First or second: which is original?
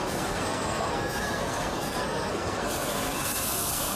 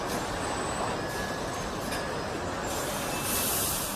second